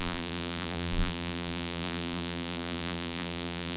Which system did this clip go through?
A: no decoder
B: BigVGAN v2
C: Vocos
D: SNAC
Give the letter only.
B